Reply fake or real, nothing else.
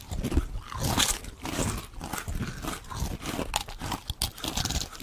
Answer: real